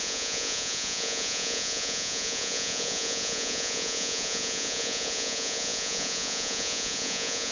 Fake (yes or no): yes